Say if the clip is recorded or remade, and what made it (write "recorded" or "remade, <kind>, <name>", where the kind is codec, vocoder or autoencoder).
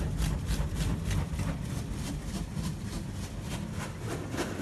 recorded